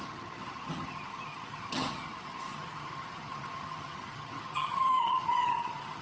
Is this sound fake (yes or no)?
yes